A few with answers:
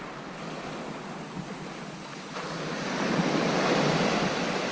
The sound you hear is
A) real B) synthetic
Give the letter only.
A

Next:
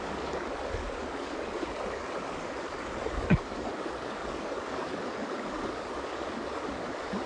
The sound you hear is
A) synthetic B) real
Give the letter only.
A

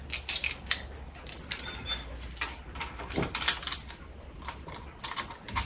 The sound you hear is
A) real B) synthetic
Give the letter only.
A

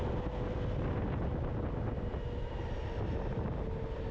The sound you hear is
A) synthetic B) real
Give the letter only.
B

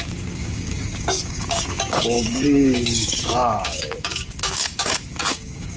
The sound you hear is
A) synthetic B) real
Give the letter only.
A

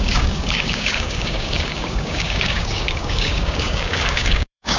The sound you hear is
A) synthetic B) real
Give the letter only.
A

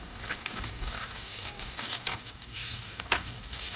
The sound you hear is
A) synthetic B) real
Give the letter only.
A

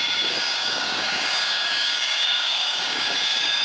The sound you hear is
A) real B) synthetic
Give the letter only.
B